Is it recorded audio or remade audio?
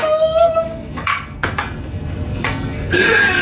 remade